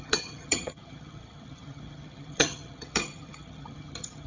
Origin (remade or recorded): remade